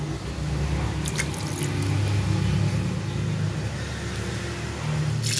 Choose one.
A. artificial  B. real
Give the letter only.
B